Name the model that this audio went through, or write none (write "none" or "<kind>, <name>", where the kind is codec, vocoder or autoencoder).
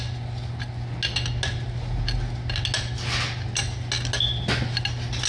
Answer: none